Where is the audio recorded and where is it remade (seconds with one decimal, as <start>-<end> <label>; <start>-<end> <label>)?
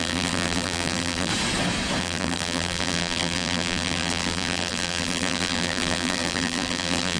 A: 0.0-1.3 remade; 1.3-2.0 recorded; 2.0-7.2 remade